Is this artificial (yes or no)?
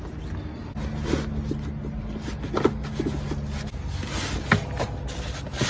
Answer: no